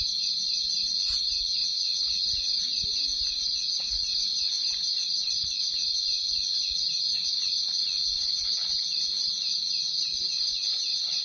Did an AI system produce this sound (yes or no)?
no